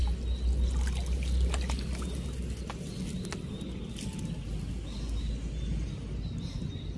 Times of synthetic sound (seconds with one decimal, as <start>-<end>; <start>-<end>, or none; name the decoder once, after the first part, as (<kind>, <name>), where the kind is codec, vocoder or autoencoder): none